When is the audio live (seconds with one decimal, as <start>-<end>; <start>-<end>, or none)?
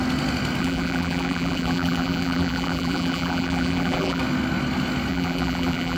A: 0.0-0.6; 4.2-5.1